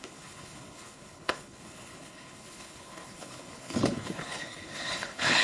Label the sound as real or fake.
fake